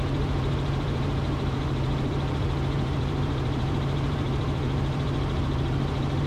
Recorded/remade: remade